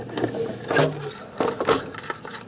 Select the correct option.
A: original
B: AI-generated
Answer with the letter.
A